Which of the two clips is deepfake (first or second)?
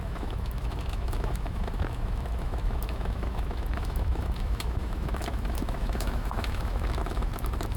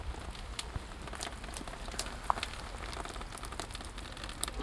first